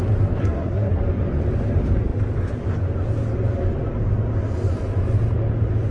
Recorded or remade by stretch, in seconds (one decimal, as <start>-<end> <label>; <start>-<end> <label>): 0.0-0.4 recorded; 0.4-1.0 remade; 1.0-5.9 recorded